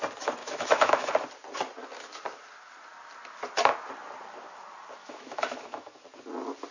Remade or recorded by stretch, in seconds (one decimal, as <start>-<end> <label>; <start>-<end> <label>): 0.0-0.4 recorded; 0.4-1.1 remade; 1.1-5.0 recorded; 5.0-6.0 remade; 6.0-6.7 recorded